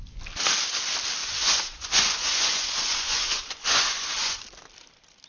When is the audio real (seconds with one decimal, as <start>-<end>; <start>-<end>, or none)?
0.0-1.2; 4.4-5.3